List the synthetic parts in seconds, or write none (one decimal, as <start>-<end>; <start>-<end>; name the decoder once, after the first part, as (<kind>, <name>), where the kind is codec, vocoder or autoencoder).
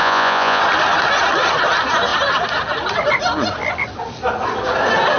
0.0-0.6 (vocoder, Vocos)